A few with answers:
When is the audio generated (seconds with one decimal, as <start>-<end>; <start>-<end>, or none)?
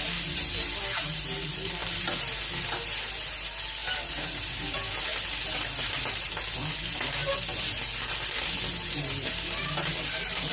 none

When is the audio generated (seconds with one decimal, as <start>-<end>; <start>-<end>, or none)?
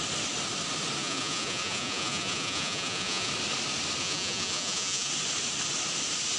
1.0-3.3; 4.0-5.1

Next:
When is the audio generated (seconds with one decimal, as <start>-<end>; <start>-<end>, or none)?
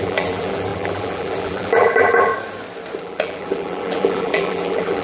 0.0-2.3; 3.0-5.0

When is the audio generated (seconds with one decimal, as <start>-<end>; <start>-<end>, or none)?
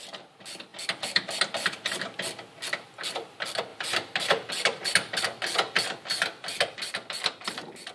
0.7-1.5; 3.7-5.2